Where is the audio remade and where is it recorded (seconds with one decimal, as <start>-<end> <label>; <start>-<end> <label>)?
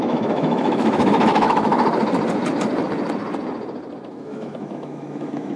0.0-1.7 remade; 1.7-4.1 recorded; 4.1-5.6 remade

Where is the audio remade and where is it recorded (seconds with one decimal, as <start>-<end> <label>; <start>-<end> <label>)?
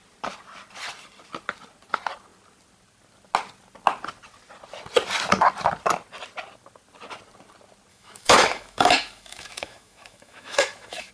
0.0-7.9 recorded; 7.9-11.1 remade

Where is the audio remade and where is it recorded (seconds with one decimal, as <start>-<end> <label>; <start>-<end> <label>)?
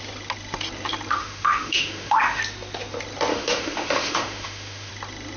0.0-1.2 recorded; 1.2-2.4 remade; 2.4-3.3 recorded; 3.3-4.9 remade; 4.9-5.4 recorded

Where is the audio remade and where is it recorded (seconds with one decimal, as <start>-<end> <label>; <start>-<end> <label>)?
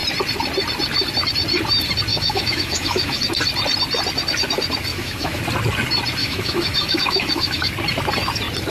0.0-2.1 recorded; 2.1-3.2 remade; 3.2-4.9 recorded; 4.9-5.4 remade; 5.4-6.2 recorded; 6.2-7.7 remade; 7.7-8.7 recorded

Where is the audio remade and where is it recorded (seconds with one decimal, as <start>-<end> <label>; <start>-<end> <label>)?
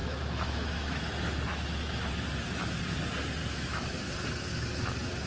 0.0-1.0 remade; 1.0-1.5 recorded; 1.5-2.1 remade; 2.1-3.4 recorded; 3.4-4.1 remade; 4.1-4.5 recorded; 4.5-5.3 remade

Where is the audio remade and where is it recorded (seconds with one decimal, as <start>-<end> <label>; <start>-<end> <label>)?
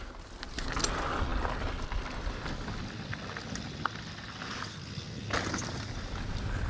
0.0-6.7 recorded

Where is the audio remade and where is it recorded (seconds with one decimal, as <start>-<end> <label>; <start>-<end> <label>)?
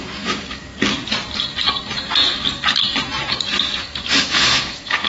0.0-0.7 remade; 0.7-3.8 recorded; 3.8-5.1 remade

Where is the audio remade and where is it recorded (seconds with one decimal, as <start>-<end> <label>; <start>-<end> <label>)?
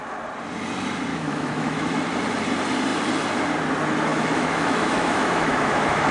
0.0-1.1 recorded; 1.1-2.0 remade; 2.0-4.1 recorded; 4.1-6.1 remade